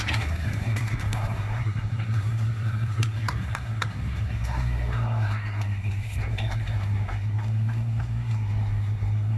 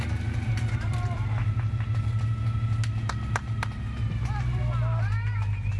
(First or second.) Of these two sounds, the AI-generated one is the first